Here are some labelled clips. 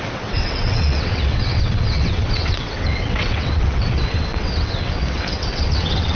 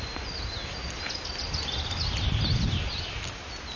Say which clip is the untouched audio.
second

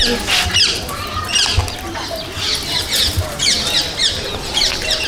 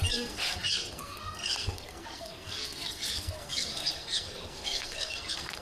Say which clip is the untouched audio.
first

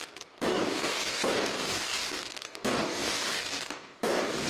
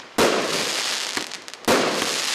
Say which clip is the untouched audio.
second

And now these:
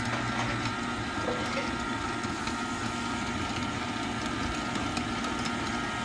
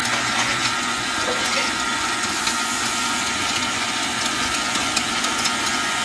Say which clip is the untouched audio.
first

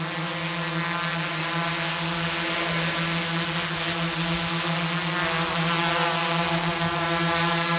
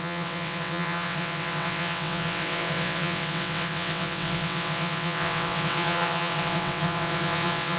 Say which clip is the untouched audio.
first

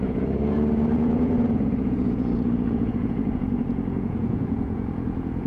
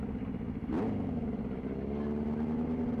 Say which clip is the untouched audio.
second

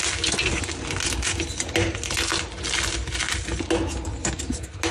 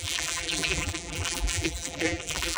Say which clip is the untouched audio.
first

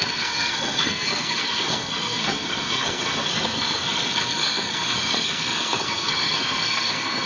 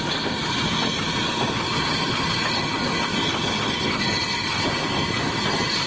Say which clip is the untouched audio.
second